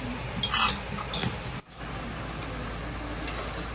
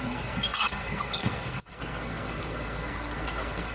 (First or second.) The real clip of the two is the first